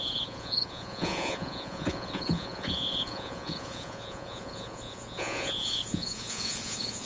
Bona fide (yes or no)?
no